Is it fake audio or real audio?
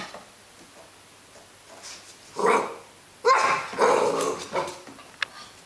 real